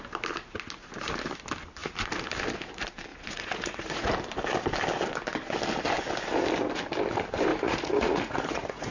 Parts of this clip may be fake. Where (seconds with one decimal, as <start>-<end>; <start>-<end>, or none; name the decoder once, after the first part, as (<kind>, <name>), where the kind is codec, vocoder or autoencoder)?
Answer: 3.1-4.1 (vocoder, Vocos); 7.5-8.9